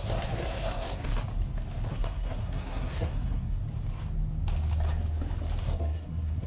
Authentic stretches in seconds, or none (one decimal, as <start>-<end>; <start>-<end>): 1.1-1.9; 3.6-5.6